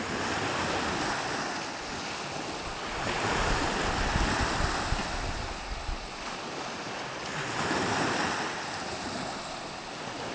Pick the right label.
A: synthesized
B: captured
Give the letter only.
B